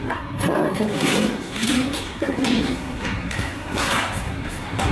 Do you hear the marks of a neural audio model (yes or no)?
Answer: yes